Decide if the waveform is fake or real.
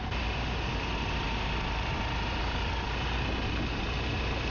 real